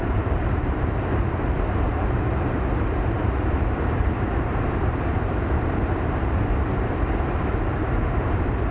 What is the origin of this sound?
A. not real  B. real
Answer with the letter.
A